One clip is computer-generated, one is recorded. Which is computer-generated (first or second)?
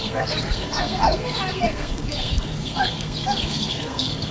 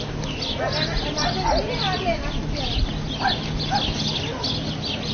first